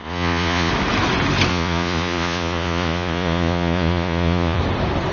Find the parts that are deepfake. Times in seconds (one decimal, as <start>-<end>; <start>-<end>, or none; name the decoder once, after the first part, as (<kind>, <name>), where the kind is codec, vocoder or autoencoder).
0.0-0.7 (vocoder, Vocos); 1.5-4.6